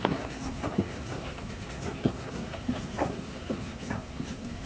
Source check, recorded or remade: remade